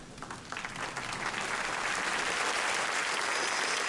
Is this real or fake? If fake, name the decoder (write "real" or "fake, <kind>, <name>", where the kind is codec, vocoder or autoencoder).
real